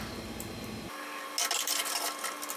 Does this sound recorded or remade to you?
recorded